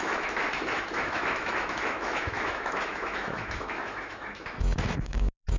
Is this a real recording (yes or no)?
no